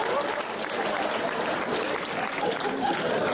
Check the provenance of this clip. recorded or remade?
recorded